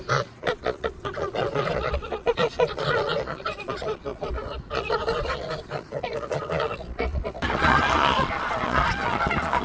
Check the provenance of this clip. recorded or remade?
remade